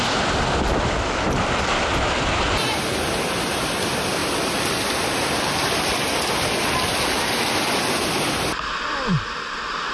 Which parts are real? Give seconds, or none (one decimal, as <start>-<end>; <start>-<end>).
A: 0.0-9.9

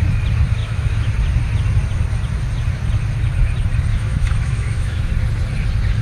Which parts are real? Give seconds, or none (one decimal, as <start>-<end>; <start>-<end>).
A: 0.0-0.6; 1.1-3.9; 5.1-6.0

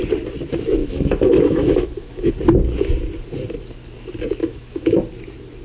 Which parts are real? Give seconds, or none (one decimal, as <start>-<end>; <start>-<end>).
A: 0.0-0.8; 2.3-4.4; 5.0-5.6